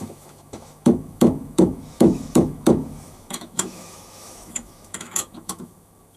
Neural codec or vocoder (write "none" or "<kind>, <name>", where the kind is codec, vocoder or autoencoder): autoencoder, DAC-VAE